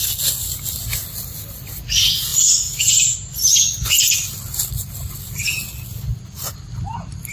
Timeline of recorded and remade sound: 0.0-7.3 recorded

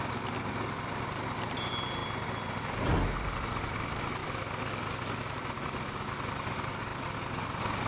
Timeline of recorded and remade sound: 0.0-7.9 recorded

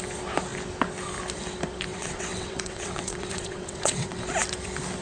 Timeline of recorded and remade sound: 0.0-1.9 recorded; 1.9-4.2 remade; 4.2-5.0 recorded

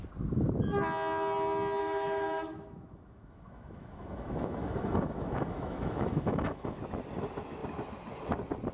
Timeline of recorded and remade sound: 0.0-1.8 recorded; 1.8-6.8 remade; 6.8-8.7 recorded

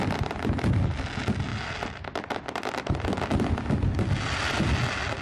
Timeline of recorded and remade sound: 0.0-5.2 recorded

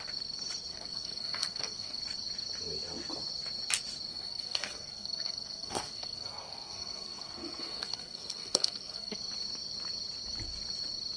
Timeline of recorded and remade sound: 0.0-0.7 recorded; 0.7-2.0 remade; 2.0-4.1 recorded; 4.1-9.2 remade; 9.2-11.2 recorded

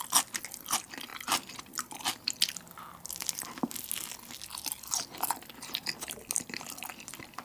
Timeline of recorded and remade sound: 0.0-7.4 recorded